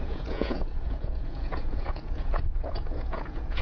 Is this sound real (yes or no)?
no